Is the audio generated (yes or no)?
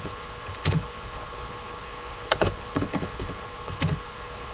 yes